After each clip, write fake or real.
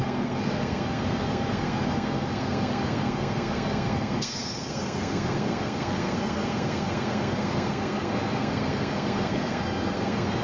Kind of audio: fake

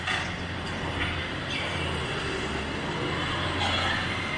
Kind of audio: real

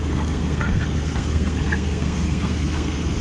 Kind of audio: fake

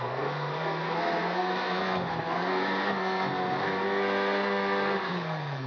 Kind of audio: fake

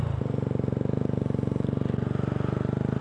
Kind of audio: real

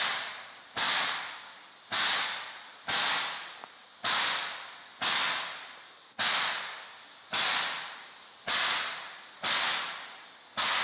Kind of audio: real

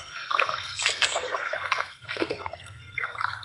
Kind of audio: fake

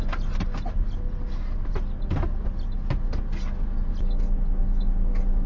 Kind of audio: real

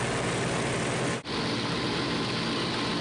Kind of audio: real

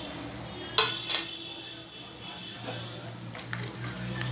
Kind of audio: real